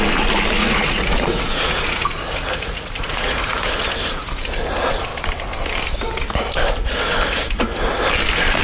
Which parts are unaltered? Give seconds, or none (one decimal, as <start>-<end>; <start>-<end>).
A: 0.0-0.6; 4.4-8.6